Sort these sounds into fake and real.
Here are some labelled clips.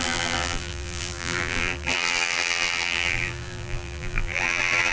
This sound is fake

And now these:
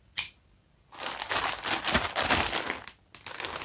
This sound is real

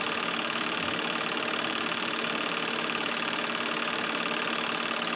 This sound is fake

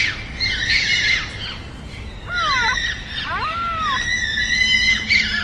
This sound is real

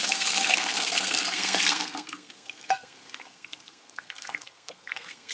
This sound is fake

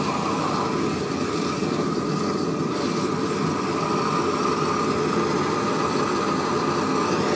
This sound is real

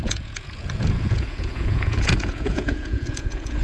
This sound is fake